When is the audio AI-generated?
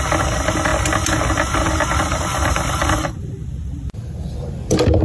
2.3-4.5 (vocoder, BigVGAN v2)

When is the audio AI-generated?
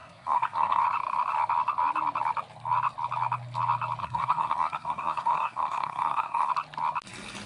0.0-0.8 (codec, SNAC); 4.0-6.5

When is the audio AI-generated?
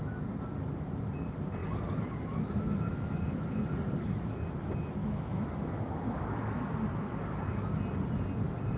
2.9-3.6 (autoencoder, DAC-VAE); 5.0-7.1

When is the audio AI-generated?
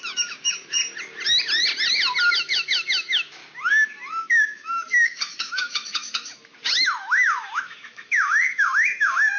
0.0-0.8 (autoencoder, DAC-VAE); 2.3-3.4; 4.1-9.4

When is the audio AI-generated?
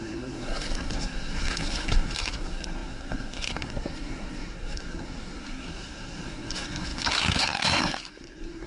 0.0-8.7 (codec, SNAC)